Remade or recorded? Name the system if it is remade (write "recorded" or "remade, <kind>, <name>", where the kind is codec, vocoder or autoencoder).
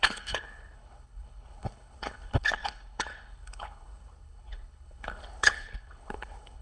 remade, codec, HILCodec